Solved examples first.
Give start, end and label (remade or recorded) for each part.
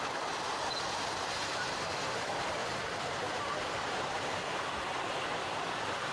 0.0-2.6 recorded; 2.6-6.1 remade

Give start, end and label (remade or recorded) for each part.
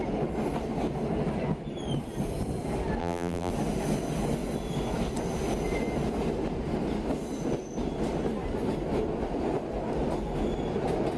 0.0-3.0 recorded; 3.0-3.5 remade; 3.5-11.2 recorded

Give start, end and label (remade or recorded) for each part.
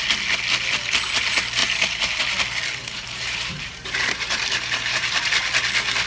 0.0-1.6 recorded; 1.6-2.2 remade; 2.2-2.8 recorded; 2.8-5.3 remade; 5.3-6.1 recorded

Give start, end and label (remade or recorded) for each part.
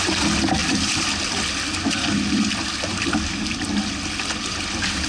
0.0-5.1 recorded